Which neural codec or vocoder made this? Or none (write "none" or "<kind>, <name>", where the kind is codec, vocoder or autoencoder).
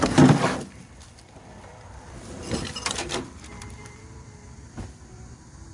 vocoder, BigVGAN v2